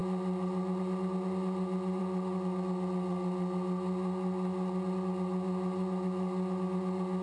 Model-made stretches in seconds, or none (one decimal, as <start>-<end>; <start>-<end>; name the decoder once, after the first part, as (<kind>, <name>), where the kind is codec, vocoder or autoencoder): none